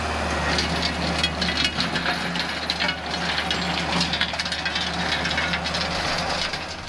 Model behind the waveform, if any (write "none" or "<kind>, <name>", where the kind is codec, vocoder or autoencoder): none